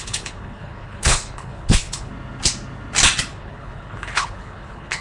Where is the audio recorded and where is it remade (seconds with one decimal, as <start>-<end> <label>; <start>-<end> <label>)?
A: 0.0-2.1 remade; 2.1-3.3 recorded; 3.3-5.0 remade